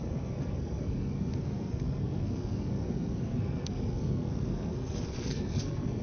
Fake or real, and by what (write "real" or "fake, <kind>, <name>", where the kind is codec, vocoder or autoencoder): fake, codec, SNAC